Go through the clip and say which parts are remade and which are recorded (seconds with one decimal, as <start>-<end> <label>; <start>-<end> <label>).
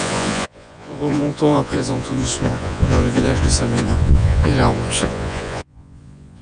0.0-6.4 remade